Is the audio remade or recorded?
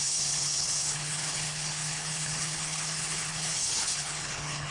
remade